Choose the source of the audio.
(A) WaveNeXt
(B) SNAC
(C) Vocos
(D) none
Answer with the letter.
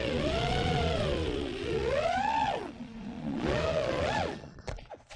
C